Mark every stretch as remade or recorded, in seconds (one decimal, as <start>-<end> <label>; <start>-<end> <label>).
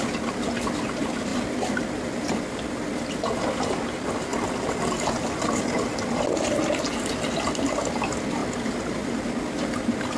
0.0-10.2 recorded